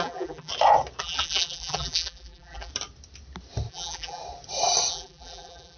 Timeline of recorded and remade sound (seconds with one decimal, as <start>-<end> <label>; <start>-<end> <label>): 0.0-0.5 remade; 0.5-1.0 recorded; 1.0-2.7 remade; 2.7-3.7 recorded; 3.7-4.2 remade; 4.2-4.9 recorded; 4.9-5.8 remade